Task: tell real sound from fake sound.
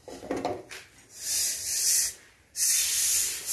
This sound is real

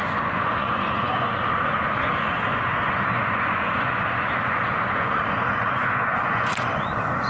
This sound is fake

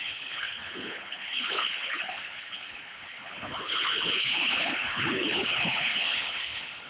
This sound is fake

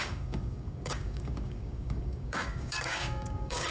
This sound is fake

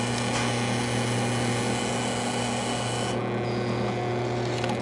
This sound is real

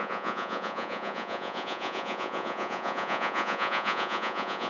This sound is fake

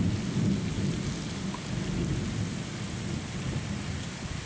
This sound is real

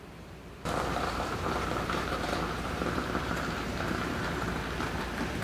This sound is fake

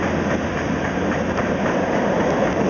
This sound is real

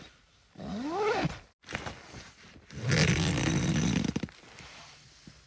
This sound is real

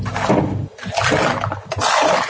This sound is real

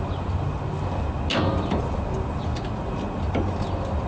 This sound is real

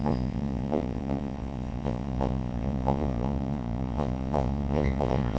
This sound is fake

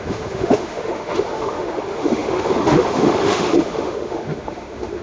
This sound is fake